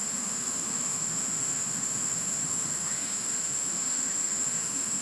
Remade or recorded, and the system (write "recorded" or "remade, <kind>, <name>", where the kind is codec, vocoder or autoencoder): remade, autoencoder, DAC-VAE